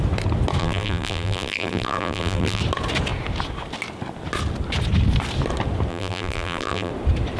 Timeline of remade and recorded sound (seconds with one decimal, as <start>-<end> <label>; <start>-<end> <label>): 0.0-0.6 recorded; 0.6-2.6 remade; 2.6-5.9 recorded; 5.9-6.9 remade; 6.9-7.4 recorded